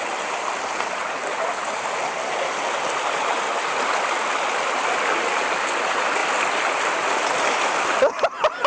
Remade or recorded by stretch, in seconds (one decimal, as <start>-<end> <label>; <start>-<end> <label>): 0.0-8.7 recorded